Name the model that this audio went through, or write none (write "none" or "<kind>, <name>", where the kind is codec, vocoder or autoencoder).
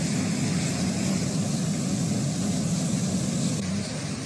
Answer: none